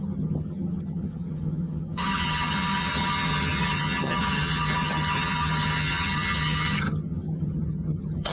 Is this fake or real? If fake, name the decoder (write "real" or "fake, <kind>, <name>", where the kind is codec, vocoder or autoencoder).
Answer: fake, vocoder, HiFi-GAN